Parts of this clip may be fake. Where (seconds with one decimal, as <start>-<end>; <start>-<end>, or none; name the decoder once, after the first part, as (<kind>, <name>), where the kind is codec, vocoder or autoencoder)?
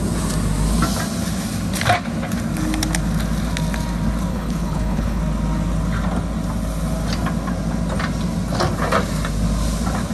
4.3-5.2 (codec, HILCodec)